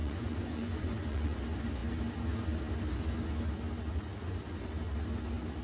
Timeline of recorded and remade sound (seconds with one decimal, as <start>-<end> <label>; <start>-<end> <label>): 0.0-1.4 remade; 1.4-5.6 recorded